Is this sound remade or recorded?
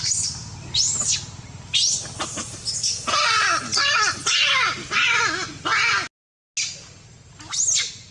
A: recorded